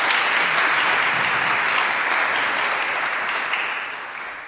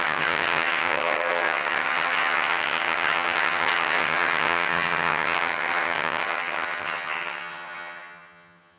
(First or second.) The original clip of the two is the first